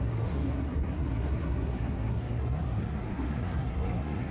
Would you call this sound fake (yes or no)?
yes